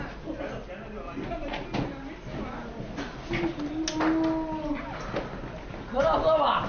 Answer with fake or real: real